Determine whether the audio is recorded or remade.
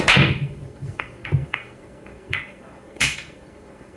remade